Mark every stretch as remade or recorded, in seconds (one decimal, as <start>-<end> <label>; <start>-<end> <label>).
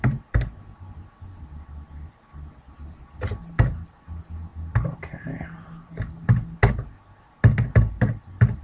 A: 0.0-8.6 recorded